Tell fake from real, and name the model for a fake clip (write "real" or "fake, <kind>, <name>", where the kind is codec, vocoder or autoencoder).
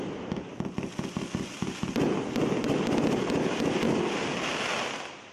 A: real